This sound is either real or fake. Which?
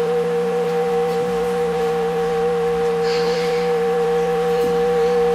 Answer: fake